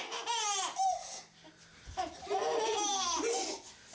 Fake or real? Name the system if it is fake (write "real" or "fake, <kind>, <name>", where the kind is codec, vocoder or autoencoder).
real